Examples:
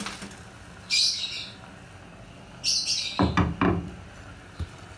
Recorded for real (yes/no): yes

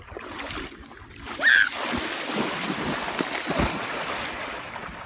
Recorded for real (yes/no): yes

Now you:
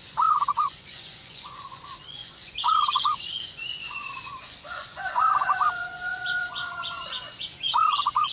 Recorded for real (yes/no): no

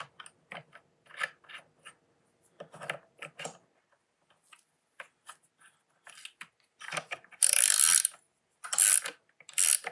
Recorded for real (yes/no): yes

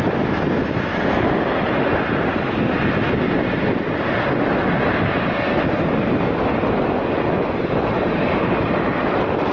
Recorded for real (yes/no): yes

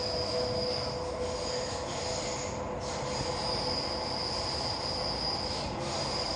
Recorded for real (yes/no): yes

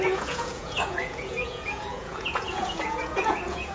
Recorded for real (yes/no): no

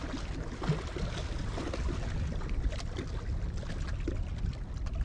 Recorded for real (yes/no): yes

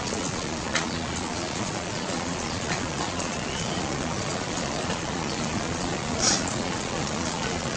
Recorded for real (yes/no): no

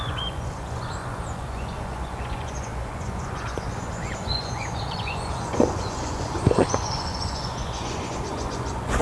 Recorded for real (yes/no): no